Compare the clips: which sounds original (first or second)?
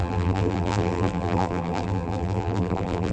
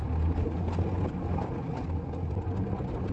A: second